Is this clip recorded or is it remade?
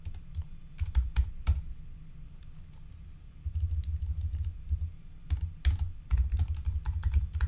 recorded